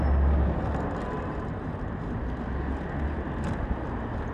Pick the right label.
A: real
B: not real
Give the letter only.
A